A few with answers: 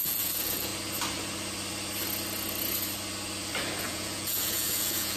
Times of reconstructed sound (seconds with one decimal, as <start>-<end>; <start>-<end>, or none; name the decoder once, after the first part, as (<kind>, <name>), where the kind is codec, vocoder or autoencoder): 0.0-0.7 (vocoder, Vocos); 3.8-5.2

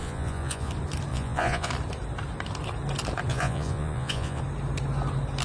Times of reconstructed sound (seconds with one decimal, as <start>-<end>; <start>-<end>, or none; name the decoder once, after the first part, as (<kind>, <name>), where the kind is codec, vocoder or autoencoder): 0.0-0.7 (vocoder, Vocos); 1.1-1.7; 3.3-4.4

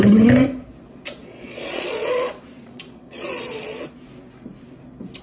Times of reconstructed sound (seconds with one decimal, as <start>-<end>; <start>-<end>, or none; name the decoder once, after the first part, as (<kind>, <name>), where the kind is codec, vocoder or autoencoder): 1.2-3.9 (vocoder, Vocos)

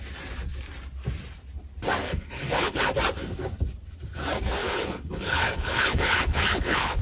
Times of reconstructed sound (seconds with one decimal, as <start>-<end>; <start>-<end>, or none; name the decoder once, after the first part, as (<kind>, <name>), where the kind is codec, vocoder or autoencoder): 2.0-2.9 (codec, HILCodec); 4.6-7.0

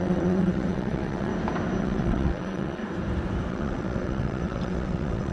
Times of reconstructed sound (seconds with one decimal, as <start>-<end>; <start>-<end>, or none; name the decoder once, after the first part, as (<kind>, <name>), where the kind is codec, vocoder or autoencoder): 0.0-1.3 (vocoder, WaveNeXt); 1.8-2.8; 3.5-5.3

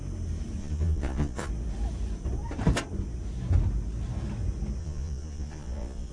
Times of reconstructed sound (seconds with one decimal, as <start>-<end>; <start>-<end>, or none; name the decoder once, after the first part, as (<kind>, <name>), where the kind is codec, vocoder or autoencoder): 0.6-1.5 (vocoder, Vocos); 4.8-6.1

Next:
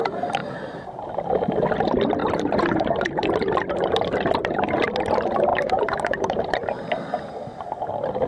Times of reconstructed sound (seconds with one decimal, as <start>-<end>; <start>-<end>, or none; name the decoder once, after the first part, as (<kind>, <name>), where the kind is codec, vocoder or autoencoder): 0.4-1.2 (vocoder, BigVGAN v2); 2.2-3.3; 5.5-6.5

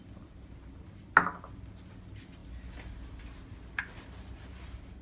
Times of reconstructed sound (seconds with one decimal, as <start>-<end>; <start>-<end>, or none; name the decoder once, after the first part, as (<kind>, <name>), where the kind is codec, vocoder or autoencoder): none